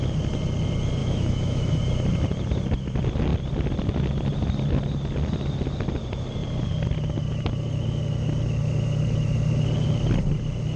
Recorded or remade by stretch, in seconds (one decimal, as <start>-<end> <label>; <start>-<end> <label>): 0.0-1.0 recorded; 1.0-1.8 remade; 1.8-10.8 recorded